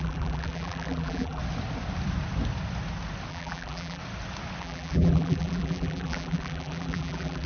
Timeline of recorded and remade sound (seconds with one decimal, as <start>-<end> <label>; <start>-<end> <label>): 0.0-1.4 remade; 1.4-3.3 recorded; 3.3-4.0 remade; 4.0-4.6 recorded; 4.6-7.5 remade